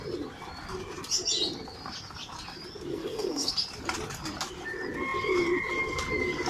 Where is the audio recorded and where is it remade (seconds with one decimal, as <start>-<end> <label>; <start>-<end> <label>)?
0.0-2.9 recorded; 2.9-3.5 remade; 3.5-6.5 recorded